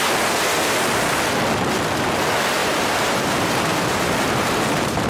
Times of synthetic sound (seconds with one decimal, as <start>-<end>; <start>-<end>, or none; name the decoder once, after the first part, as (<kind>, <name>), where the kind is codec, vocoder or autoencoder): 2.6-5.1 (vocoder, BigVGAN v2)